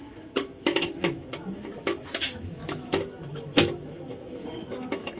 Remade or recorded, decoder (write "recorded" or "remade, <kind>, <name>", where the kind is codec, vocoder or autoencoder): remade, autoencoder, DAC-VAE